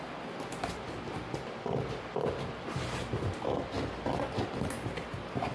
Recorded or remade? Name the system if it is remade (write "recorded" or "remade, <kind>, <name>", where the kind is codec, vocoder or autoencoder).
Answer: recorded